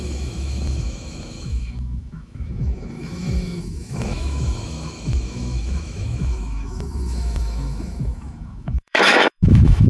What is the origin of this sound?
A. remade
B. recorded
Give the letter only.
A